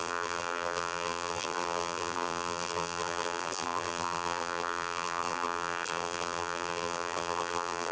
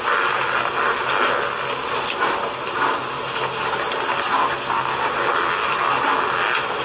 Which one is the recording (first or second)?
second